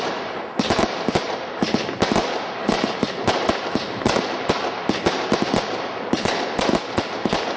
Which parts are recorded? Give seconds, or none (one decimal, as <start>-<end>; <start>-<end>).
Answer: 0.0-7.6